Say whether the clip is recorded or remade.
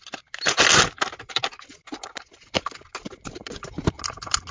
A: recorded